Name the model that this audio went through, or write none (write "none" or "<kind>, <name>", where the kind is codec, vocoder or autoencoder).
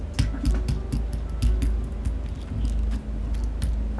none